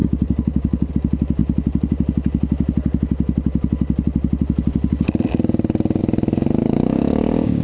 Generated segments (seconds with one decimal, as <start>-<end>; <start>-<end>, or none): 0.0-0.9; 6.6-7.6